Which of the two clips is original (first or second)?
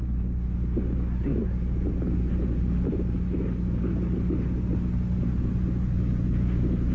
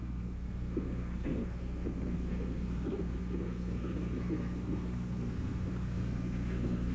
first